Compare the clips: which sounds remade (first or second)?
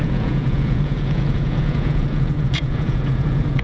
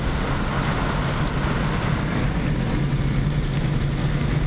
first